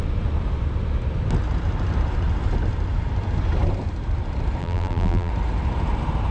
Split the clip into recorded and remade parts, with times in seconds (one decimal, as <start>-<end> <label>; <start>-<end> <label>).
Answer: 0.0-4.6 recorded; 4.6-5.3 remade; 5.3-6.3 recorded